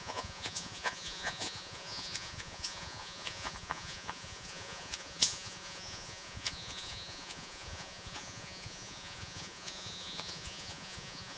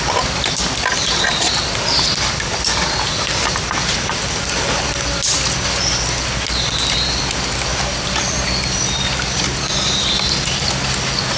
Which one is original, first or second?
second